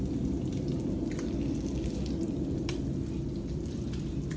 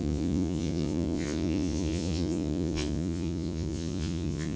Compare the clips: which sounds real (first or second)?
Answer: first